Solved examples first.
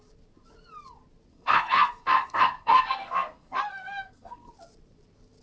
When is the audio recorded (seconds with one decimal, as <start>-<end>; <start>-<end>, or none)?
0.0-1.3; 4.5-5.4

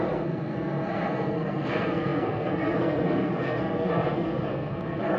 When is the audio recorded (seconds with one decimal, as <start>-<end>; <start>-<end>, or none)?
none

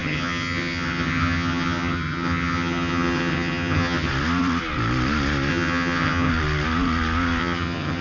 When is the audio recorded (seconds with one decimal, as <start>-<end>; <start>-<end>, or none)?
4.1-5.5; 6.3-7.4

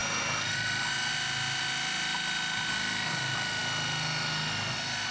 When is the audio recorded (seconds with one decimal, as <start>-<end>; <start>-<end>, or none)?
0.0-5.1

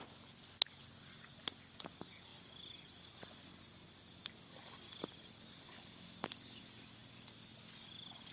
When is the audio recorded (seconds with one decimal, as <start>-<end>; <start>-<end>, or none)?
0.0-8.3

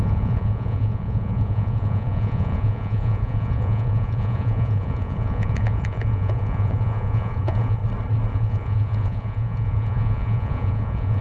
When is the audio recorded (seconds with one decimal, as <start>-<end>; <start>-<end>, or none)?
7.8-8.3

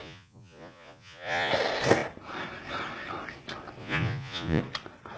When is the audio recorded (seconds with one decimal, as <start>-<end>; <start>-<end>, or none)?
1.5-3.8; 4.6-5.2